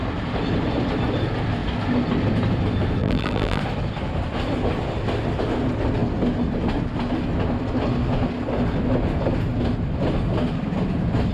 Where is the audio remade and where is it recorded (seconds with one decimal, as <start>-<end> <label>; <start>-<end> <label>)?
0.0-3.0 recorded; 3.0-3.6 remade; 3.6-11.3 recorded